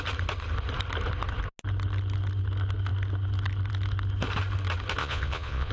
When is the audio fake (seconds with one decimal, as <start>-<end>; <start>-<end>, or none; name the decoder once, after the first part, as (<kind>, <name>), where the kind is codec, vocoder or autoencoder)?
5.0-5.7 (vocoder, Vocos)